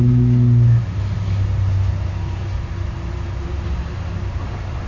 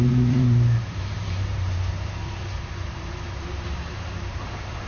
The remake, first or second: second